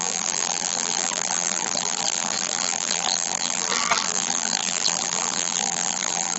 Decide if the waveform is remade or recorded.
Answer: remade